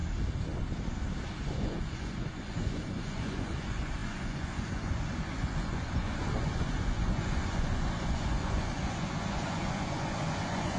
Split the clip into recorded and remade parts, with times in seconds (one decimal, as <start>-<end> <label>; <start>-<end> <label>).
0.0-1.4 recorded; 1.4-10.8 remade